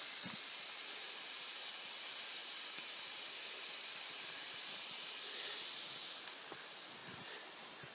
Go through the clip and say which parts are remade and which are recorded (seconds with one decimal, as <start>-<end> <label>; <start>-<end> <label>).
0.0-7.9 recorded